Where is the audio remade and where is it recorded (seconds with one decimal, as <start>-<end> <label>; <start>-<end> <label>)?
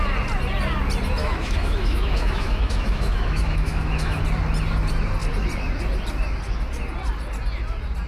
0.0-1.2 recorded; 1.2-4.2 remade; 4.2-8.1 recorded